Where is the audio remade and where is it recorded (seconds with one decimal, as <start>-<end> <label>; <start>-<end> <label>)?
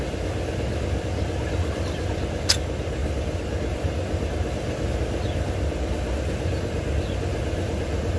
0.0-8.2 recorded